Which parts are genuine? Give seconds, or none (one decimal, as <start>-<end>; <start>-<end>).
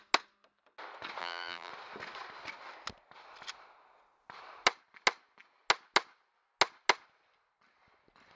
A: 0.0-1.2; 1.7-8.4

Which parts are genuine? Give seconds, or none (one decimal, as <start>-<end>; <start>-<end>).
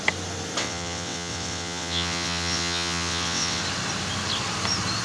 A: 0.0-0.6; 3.6-5.0